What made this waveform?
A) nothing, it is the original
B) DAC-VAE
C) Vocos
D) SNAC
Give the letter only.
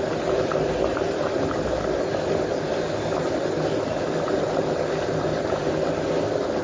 A